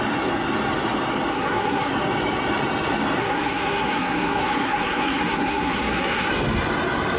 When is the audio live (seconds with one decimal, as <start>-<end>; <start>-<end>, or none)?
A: 0.0-1.3; 1.9-3.2; 6.3-7.2